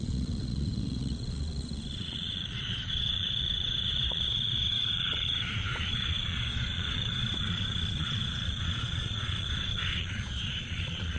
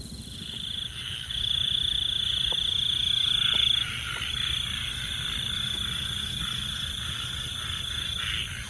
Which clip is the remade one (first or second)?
first